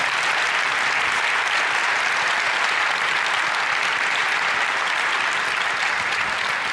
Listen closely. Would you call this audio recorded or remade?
recorded